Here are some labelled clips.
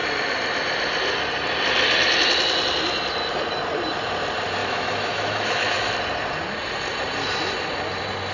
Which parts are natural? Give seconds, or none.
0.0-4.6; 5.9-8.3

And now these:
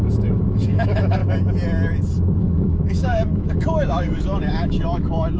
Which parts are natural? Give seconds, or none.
1.2-2.4

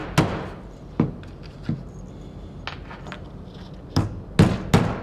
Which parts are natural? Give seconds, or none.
0.0-5.0

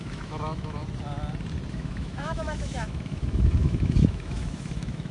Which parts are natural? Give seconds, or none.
0.8-1.7

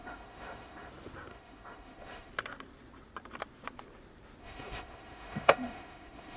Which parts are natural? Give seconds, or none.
0.9-1.3; 2.3-4.4

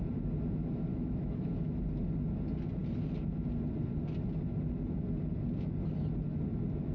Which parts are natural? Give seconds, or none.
0.0-0.9; 1.8-6.9